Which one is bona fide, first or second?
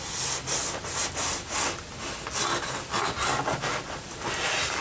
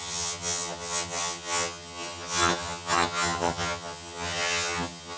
first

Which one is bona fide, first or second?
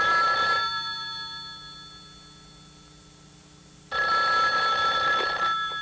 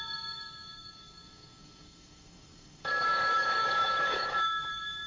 first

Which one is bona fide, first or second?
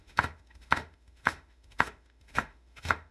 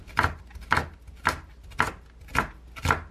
second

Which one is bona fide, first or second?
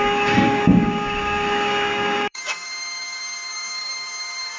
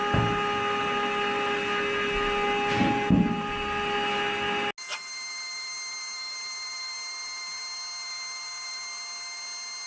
second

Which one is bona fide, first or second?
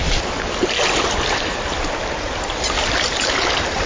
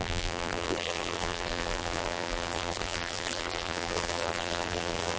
first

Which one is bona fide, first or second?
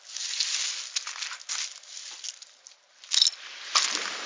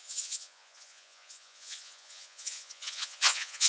first